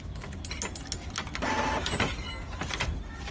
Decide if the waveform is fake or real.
real